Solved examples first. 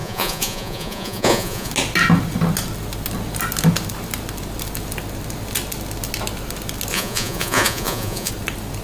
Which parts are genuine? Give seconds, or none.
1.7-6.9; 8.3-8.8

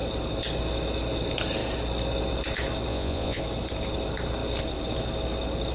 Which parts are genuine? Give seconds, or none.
0.0-2.9; 3.4-5.7

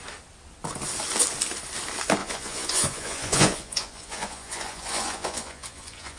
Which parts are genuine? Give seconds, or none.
0.0-2.2

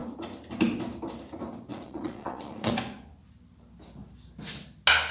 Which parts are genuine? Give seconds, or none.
0.0-1.7; 2.7-5.1